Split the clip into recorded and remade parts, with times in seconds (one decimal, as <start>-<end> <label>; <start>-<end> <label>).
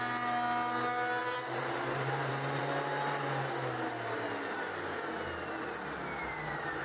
0.0-1.2 recorded; 1.2-2.6 remade; 2.6-6.8 recorded